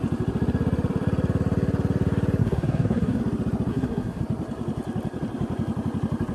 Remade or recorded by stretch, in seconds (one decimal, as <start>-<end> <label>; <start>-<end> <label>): 0.0-2.4 recorded; 2.4-3.2 remade; 3.2-3.7 recorded; 3.7-4.2 remade; 4.2-6.3 recorded